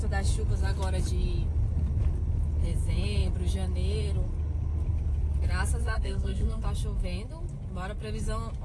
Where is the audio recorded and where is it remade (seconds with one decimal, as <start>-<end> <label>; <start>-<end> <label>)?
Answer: 0.0-5.8 recorded; 5.8-6.6 remade; 6.6-8.6 recorded

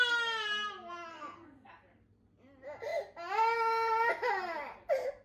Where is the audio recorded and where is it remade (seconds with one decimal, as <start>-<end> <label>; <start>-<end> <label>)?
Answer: 0.0-1.1 recorded; 1.1-1.7 remade; 1.7-5.2 recorded

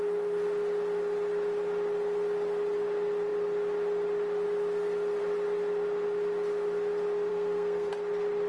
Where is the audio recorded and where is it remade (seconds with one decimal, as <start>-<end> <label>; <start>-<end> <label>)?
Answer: 0.0-7.3 recorded; 7.3-7.9 remade; 7.9-8.5 recorded

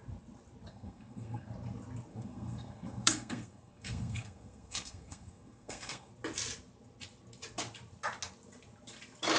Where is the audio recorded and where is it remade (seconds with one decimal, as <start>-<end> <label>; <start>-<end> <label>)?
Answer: 0.0-0.7 recorded; 0.7-1.5 remade; 1.5-2.1 recorded; 2.1-6.1 remade; 6.1-9.4 recorded